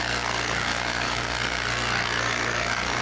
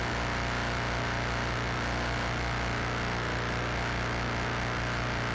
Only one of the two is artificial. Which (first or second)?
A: first